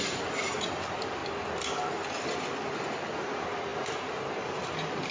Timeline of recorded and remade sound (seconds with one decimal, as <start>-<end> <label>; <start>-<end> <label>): 0.0-1.2 remade; 1.2-3.1 recorded; 3.1-5.1 remade